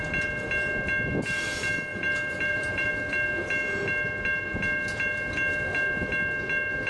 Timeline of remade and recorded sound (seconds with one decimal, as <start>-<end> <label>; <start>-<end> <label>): 0.0-1.9 recorded; 1.9-2.9 remade; 2.9-6.9 recorded